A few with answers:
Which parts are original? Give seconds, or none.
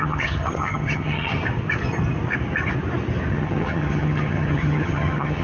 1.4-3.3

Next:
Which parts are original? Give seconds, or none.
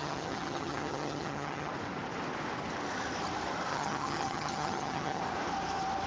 1.7-3.7; 5.2-6.1